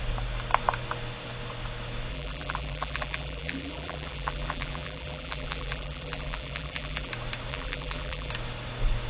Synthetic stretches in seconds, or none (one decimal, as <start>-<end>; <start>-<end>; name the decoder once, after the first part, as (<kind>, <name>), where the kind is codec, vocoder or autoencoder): 2.1-7.1 (vocoder, BigVGAN v2); 7.5-8.3